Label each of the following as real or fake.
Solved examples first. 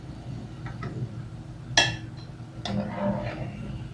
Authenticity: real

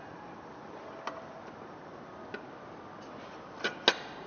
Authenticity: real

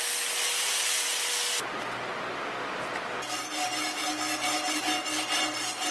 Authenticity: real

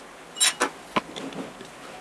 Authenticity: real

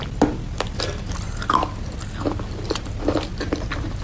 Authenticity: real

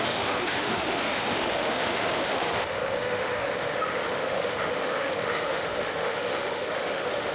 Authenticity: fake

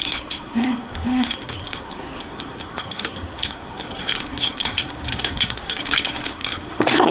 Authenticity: fake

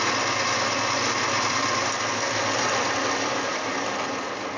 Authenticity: real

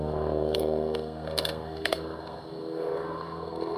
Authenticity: fake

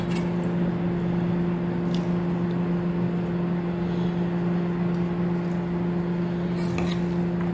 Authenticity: real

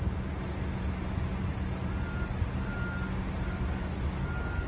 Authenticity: real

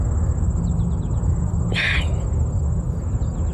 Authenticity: real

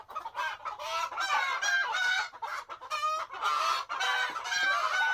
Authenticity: real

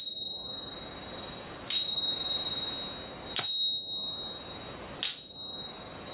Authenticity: real